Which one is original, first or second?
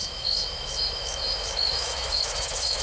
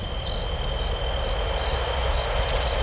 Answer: second